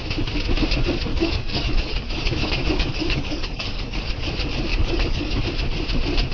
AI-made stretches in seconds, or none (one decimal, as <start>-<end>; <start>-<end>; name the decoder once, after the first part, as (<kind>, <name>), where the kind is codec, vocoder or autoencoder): 1.1-4.1 (codec, DAC); 4.7-5.4